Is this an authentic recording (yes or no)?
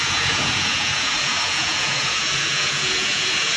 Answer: no